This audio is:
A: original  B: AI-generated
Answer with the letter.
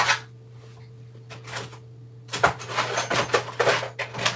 A